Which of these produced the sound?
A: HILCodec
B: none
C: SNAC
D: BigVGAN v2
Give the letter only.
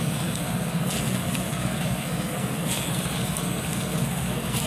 C